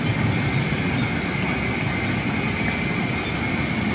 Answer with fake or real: real